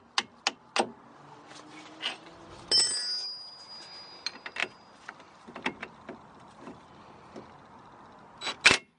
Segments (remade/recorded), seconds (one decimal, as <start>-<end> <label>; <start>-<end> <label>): 0.0-4.6 recorded; 4.6-7.1 remade; 7.1-9.0 recorded